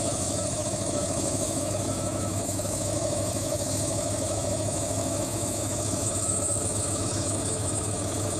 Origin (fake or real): fake